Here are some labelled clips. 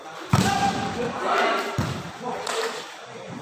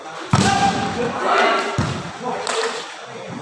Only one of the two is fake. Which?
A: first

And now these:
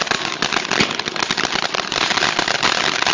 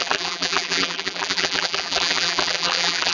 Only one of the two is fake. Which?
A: second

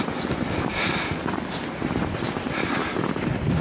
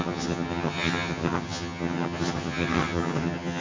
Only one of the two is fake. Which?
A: second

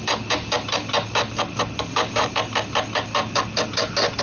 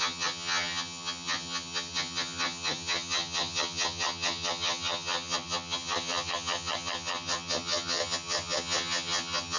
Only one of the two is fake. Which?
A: second